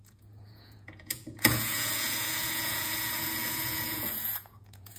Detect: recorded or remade remade